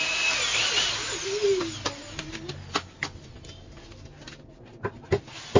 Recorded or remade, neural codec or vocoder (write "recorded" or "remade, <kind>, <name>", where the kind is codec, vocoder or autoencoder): recorded